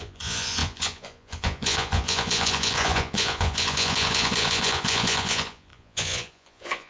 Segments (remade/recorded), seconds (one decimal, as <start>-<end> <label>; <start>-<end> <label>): 0.0-6.9 remade